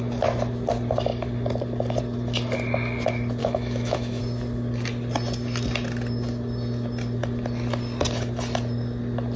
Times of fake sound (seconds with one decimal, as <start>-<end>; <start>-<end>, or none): 3.4-4.2